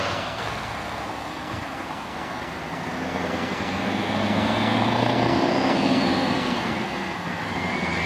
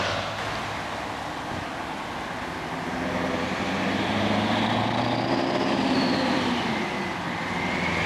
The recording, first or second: second